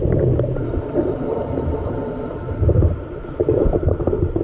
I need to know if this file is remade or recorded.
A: recorded